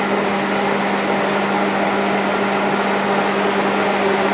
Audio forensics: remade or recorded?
recorded